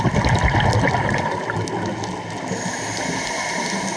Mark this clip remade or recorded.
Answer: recorded